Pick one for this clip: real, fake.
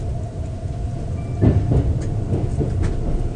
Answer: real